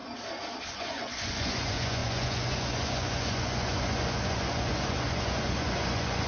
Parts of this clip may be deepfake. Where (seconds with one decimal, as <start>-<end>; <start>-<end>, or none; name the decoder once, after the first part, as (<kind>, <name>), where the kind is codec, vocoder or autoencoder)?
0.7-6.3 (vocoder, Vocos)